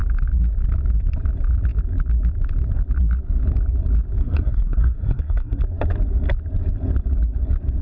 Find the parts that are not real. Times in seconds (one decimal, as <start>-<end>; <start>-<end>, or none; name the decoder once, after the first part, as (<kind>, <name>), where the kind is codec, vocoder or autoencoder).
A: 4.2-5.6 (codec, SNAC)